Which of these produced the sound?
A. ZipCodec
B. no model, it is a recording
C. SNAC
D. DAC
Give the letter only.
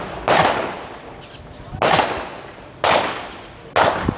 B